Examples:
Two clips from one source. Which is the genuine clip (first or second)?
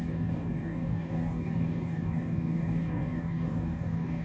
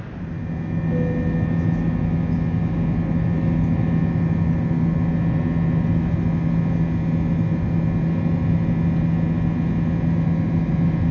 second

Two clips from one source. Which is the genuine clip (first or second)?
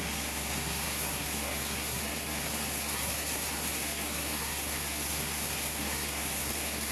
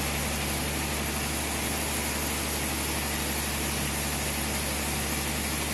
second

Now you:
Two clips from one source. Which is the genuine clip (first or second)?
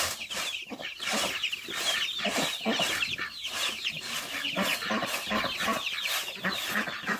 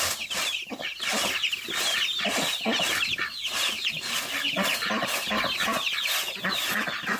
second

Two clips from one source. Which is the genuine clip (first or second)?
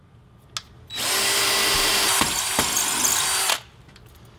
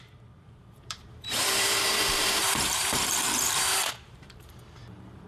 first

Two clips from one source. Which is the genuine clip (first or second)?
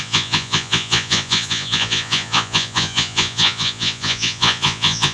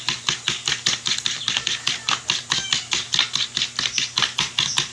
second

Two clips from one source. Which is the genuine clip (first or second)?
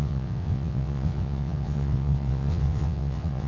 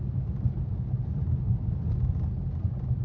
second